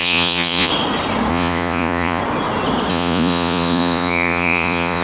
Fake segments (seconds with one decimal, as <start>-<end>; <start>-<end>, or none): 0.0-0.7; 1.3-2.2; 2.9-5.0